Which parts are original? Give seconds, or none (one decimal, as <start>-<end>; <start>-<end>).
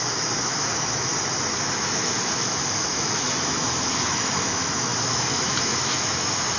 1.1-1.7